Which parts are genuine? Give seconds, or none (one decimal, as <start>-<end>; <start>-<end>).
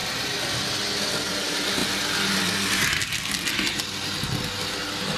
0.0-5.2